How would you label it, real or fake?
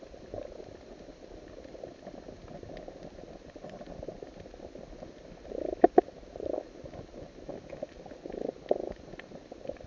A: real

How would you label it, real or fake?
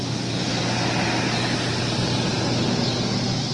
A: real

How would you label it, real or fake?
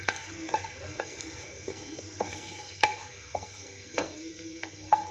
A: fake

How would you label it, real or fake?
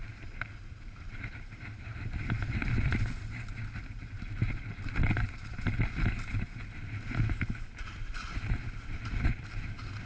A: real